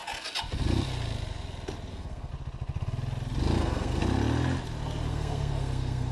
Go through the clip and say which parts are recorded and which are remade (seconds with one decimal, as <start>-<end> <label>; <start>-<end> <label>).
0.0-1.9 recorded; 1.9-2.3 remade; 2.3-3.6 recorded; 3.6-4.0 remade; 4.0-5.1 recorded; 5.1-6.1 remade